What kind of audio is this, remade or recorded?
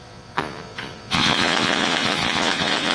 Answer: remade